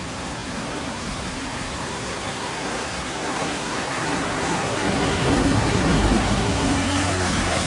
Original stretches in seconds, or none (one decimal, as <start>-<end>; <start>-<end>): none